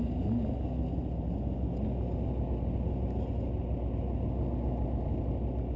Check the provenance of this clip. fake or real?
real